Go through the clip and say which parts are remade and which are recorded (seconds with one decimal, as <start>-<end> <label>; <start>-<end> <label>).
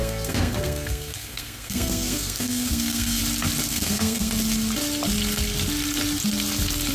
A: 0.0-3.2 remade; 3.2-3.7 recorded; 3.7-4.3 remade; 4.3-6.9 recorded